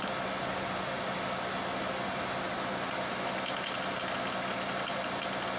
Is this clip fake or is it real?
real